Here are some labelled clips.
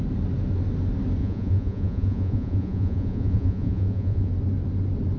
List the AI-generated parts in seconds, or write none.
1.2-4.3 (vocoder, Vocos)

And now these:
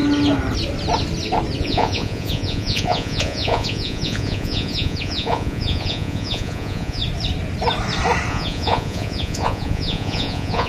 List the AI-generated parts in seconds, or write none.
1.6-7.0 (vocoder, Vocos); 8.3-10.7

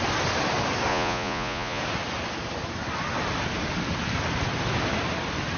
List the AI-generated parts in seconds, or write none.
0.9-1.8 (vocoder, Vocos)

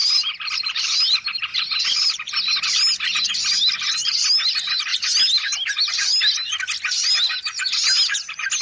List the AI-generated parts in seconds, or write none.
none

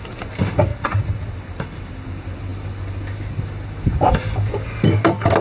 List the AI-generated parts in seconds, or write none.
0.7-1.2 (vocoder, Vocos)